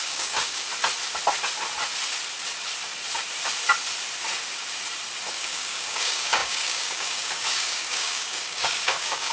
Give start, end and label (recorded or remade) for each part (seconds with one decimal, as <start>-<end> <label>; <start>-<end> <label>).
0.0-0.7 remade; 0.7-5.3 recorded; 5.3-9.3 remade